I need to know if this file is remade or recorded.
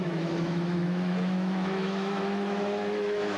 remade